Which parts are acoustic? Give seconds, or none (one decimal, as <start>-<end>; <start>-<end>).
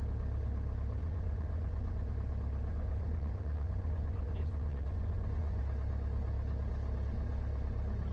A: 0.0-1.0; 2.1-2.7; 5.6-8.1